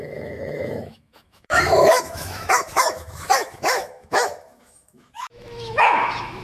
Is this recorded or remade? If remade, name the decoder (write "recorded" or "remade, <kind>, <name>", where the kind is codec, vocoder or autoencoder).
remade, autoencoder, DAC-VAE